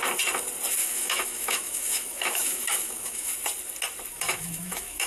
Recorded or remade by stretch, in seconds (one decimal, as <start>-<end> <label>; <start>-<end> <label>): 0.0-0.8 recorded; 0.8-3.3 remade; 3.3-4.1 recorded; 4.1-5.1 remade